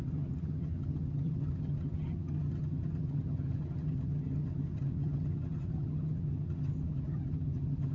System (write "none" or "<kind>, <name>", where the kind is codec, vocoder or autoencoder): vocoder, HiFi-GAN